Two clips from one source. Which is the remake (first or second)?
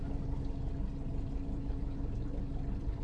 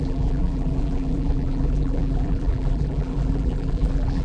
second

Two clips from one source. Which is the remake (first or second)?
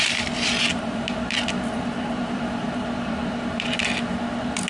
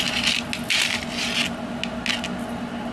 first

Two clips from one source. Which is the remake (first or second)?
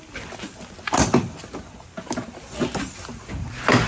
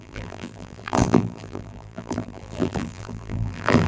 second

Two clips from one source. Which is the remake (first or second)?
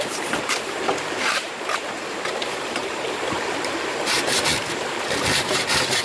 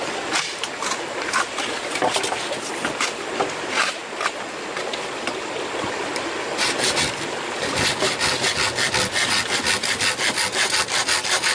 first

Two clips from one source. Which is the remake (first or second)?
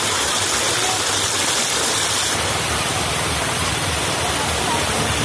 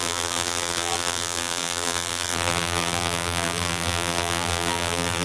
second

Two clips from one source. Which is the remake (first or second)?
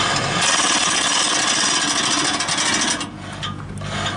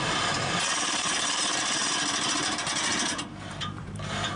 second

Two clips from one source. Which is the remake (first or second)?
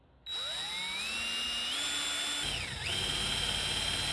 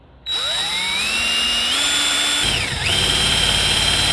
second